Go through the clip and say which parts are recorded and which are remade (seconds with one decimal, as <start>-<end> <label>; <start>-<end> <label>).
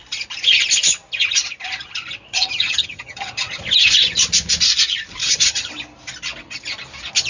0.0-2.3 recorded; 2.3-3.6 remade; 3.6-5.2 recorded; 5.2-5.7 remade; 5.7-7.3 recorded